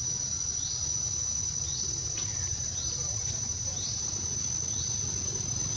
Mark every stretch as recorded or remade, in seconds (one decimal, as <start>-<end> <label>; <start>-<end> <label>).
0.0-2.5 recorded; 2.5-4.4 remade; 4.4-5.8 recorded